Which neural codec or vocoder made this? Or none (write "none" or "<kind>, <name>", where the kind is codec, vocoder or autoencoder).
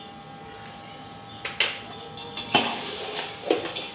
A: none